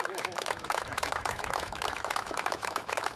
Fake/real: fake